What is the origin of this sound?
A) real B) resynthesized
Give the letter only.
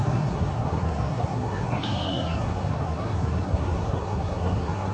B